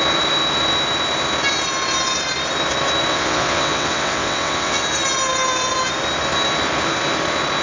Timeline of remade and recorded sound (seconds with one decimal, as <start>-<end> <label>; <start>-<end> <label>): 0.0-3.1 recorded; 3.1-4.8 remade; 4.8-7.6 recorded